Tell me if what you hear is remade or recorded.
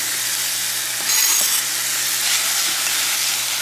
recorded